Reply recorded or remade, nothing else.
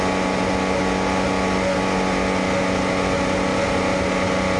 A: recorded